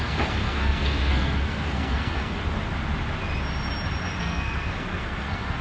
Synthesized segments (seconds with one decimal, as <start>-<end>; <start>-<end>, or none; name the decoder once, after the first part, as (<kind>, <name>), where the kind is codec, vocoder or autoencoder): 0.0-2.4 (codec, SNAC); 4.2-5.6